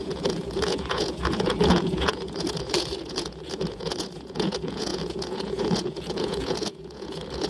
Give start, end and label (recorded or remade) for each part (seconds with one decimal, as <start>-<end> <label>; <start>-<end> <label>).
0.0-7.5 remade